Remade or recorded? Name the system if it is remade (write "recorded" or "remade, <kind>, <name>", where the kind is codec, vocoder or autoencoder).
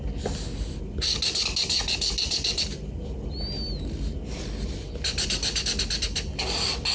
recorded